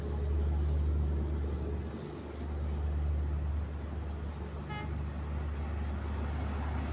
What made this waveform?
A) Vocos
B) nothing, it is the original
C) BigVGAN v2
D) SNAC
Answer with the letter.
B